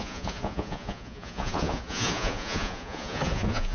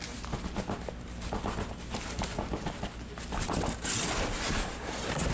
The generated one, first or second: first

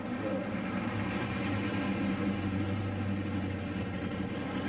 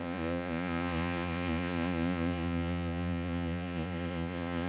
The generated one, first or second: second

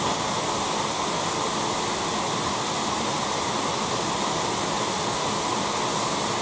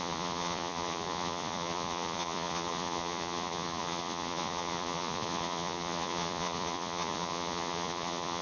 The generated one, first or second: second